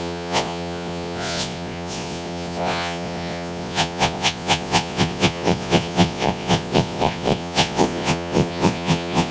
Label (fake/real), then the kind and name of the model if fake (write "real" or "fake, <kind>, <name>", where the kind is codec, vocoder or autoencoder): fake, vocoder, Vocos